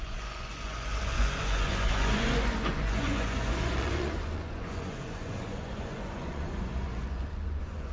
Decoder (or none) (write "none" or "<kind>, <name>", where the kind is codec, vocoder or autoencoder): vocoder, Vocos